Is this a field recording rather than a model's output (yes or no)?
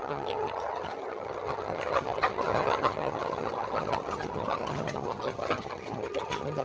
no